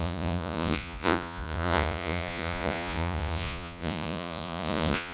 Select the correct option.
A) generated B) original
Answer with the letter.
A